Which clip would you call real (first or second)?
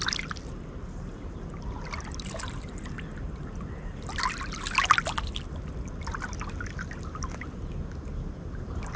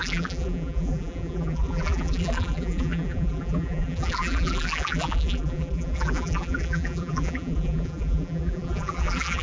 first